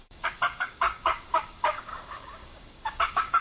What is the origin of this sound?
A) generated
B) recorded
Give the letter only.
A